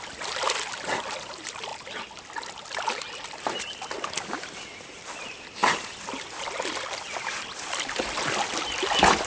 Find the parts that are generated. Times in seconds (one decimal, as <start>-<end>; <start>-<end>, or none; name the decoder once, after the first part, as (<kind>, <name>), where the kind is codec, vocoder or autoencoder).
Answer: none